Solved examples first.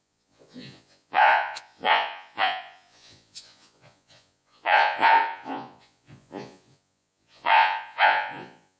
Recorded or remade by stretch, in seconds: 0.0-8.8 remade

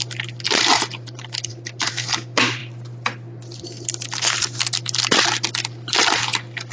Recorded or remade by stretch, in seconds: 0.0-0.7 recorded; 0.7-1.9 remade; 1.9-6.7 recorded

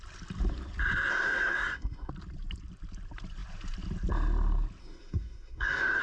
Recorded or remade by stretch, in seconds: 0.0-1.1 recorded; 1.1-2.1 remade; 2.1-4.8 recorded; 4.8-6.0 remade

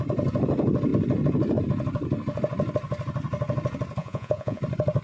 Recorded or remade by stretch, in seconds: 0.0-4.0 recorded; 4.0-4.6 remade; 4.6-5.0 recorded

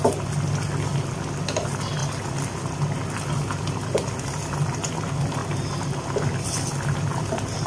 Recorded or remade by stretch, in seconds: 0.0-7.7 recorded